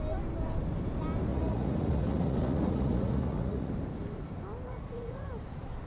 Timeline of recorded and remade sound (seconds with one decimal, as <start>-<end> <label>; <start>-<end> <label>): 0.0-1.3 recorded; 1.3-3.7 remade; 3.7-4.7 recorded; 4.7-5.3 remade; 5.3-5.9 recorded